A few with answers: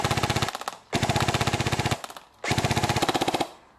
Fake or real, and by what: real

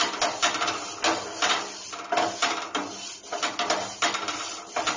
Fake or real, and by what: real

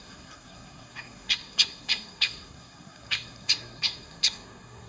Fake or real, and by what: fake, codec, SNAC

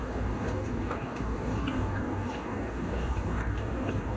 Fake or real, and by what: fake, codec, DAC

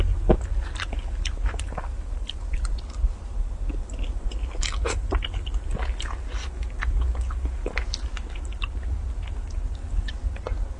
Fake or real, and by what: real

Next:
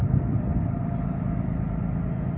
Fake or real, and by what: real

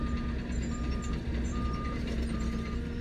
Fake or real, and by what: real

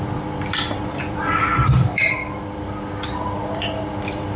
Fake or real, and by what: fake, vocoder, BigVGAN v2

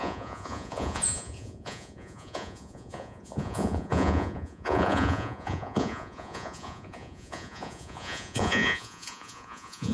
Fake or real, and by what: fake, vocoder, Vocos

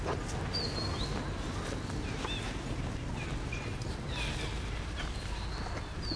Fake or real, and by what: real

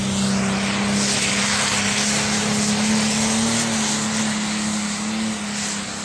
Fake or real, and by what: real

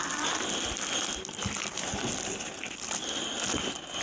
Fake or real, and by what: real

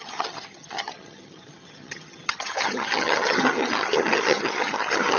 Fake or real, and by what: fake, vocoder, HiFi-GAN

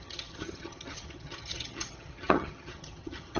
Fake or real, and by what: fake, vocoder, HiFi-GAN